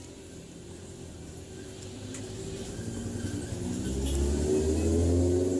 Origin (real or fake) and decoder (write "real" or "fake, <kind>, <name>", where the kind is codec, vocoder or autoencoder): real